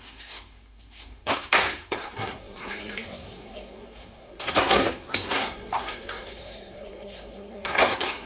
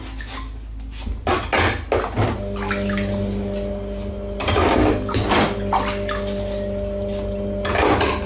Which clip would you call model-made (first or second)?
first